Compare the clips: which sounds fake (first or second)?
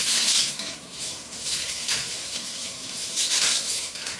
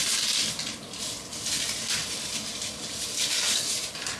first